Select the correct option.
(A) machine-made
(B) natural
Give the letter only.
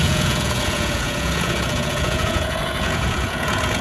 A